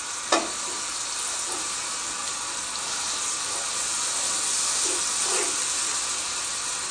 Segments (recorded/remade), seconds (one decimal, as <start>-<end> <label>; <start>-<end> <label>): 0.0-6.9 recorded